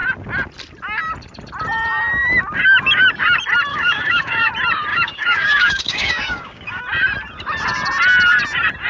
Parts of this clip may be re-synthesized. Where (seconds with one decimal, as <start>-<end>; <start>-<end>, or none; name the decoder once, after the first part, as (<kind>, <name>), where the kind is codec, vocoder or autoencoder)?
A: 3.7-4.5 (codec, DAC); 4.9-6.8